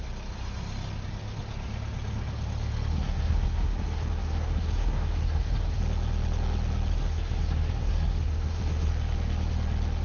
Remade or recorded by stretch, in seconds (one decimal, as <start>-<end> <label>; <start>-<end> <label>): 0.0-2.9 recorded; 2.9-5.8 remade; 5.8-6.9 recorded; 6.9-8.9 remade; 8.9-10.0 recorded